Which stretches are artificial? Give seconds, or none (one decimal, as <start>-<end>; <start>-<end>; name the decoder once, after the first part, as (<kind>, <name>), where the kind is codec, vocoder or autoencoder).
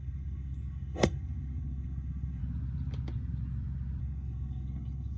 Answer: 0.0-2.4 (codec, SNAC); 4.0-5.2